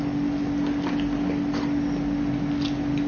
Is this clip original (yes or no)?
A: yes